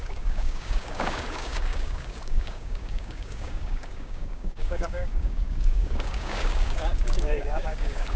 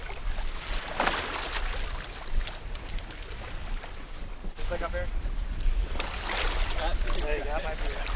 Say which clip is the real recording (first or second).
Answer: second